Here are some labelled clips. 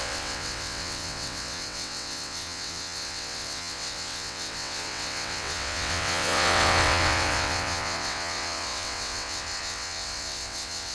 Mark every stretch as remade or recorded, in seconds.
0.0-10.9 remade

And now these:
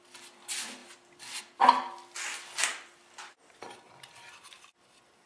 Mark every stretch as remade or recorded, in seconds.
0.0-2.7 recorded; 2.7-3.7 remade; 3.7-5.3 recorded

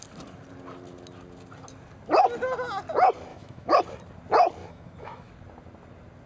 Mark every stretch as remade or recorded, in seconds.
0.0-3.3 recorded; 3.3-3.8 remade; 3.8-4.6 recorded; 4.6-5.3 remade; 5.3-6.3 recorded

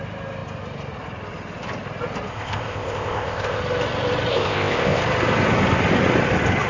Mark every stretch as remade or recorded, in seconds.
0.0-2.3 recorded; 2.3-3.6 remade; 3.6-4.3 recorded; 4.3-5.0 remade; 5.0-6.7 recorded

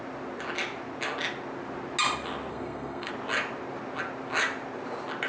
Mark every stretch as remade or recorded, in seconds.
0.0-2.5 recorded; 2.5-3.1 remade; 3.1-5.3 recorded

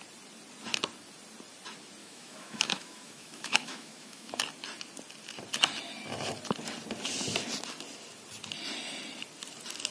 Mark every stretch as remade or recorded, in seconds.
0.0-2.0 recorded; 2.0-4.3 remade; 4.3-9.9 recorded

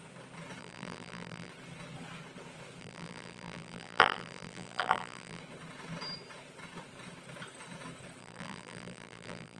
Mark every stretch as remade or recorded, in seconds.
0.0-0.6 recorded; 0.6-1.5 remade; 1.5-2.8 recorded; 2.8-5.4 remade; 5.4-8.2 recorded; 8.2-9.6 remade

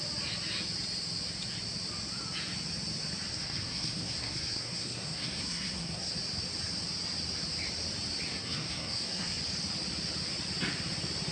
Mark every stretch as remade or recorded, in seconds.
0.0-3.3 recorded; 3.3-6.1 remade; 6.1-8.3 recorded; 8.3-9.4 remade; 9.4-11.3 recorded